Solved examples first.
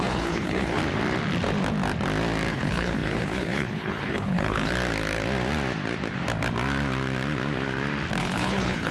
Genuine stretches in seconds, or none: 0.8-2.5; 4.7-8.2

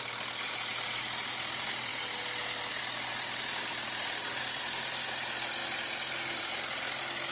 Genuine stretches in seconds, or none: 0.0-7.3

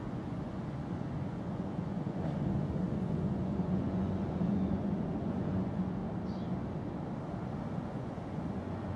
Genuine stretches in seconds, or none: 6.0-7.8

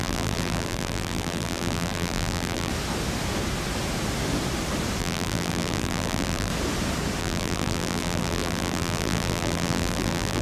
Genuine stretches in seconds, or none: 2.7-5.0; 6.5-7.2